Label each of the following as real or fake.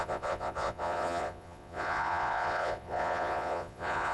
fake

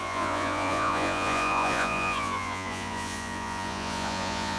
fake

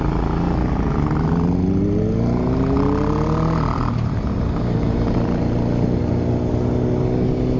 real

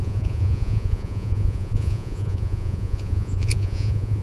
fake